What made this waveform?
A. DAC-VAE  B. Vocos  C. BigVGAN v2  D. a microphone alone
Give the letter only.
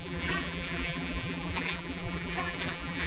C